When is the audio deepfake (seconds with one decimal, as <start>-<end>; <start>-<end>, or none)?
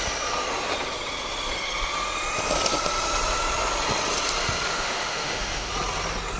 4.7-5.7